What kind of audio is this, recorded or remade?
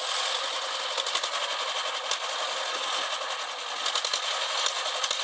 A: recorded